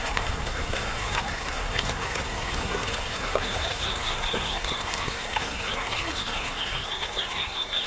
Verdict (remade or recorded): remade